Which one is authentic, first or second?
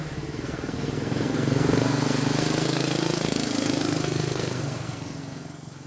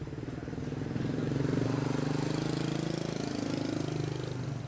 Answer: second